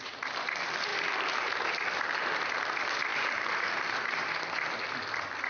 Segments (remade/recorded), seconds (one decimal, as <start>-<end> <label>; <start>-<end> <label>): 0.0-0.9 recorded; 0.9-1.9 remade; 1.9-3.1 recorded; 3.1-3.7 remade; 3.7-5.5 recorded